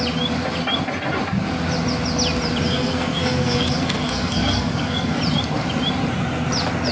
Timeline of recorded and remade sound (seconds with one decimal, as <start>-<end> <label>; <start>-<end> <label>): 0.0-2.7 recorded; 2.7-5.2 remade; 5.2-6.9 recorded